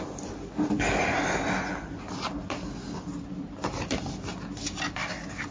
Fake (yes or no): no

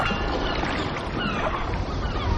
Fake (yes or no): no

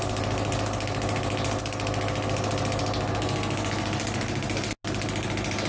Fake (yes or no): no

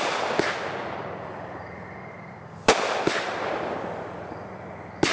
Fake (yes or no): no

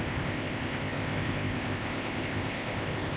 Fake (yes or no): yes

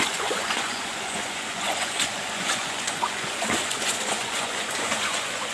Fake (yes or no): yes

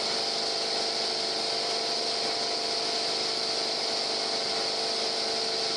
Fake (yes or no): no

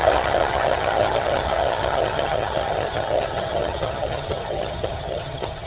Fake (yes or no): yes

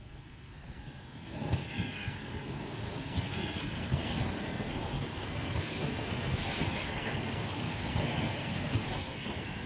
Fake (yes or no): yes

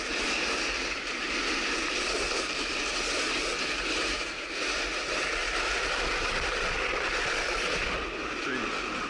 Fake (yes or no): no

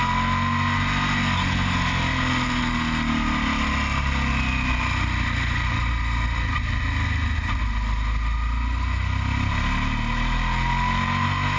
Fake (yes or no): no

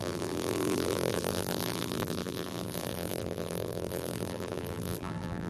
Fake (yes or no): yes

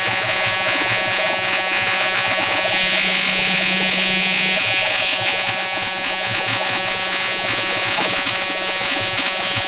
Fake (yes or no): yes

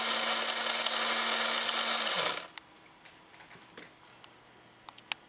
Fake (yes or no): no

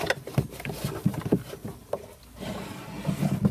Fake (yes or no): no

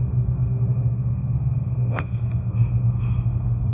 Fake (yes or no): yes